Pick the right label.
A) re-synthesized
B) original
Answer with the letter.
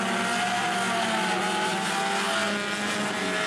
B